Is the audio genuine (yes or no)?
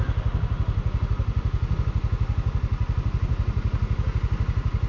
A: yes